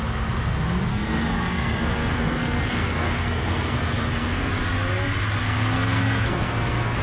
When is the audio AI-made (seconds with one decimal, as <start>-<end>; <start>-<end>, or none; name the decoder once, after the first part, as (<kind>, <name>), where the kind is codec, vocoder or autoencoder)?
0.9-4.5 (codec, SNAC); 5.4-7.0